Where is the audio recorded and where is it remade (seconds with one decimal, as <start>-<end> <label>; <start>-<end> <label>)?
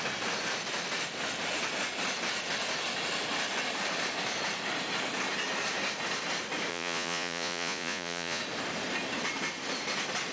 0.0-6.7 recorded; 6.7-8.4 remade; 8.4-10.3 recorded